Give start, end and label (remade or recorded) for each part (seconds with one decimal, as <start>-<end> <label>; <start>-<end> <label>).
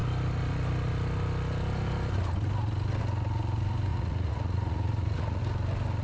0.0-3.9 recorded; 3.9-5.4 remade; 5.4-6.0 recorded